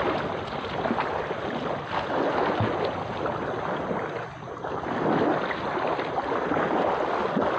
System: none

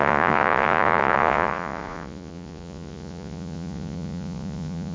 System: vocoder, Vocos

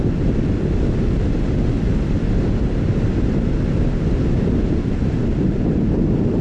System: none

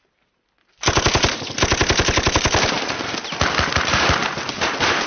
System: none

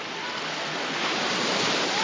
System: none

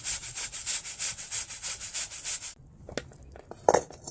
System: none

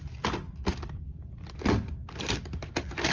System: none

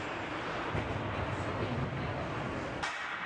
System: none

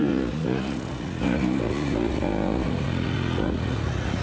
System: vocoder, Vocos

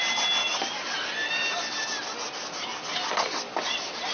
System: none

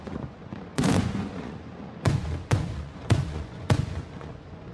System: vocoder, Vocos